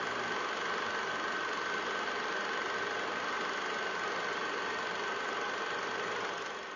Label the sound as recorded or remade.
recorded